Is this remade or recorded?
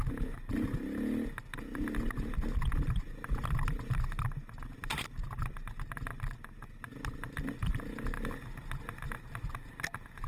recorded